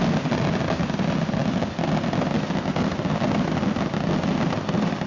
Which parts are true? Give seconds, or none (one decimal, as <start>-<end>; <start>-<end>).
0.0-5.1